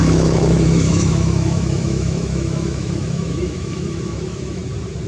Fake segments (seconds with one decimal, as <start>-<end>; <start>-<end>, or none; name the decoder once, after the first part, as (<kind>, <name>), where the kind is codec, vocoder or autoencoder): 0.0-4.6 (autoencoder, DAC-VAE)